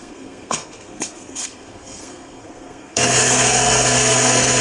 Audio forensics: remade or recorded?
remade